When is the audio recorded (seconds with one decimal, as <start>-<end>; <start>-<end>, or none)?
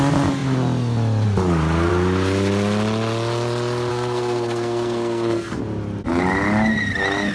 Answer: 0.0-3.9; 5.6-7.3